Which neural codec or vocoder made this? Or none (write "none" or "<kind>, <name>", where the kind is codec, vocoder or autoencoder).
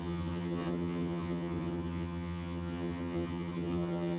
vocoder, HiFi-GAN